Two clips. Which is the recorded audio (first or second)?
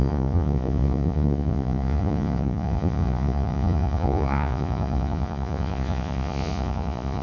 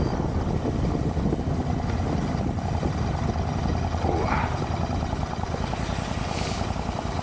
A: second